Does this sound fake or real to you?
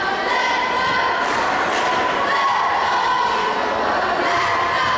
real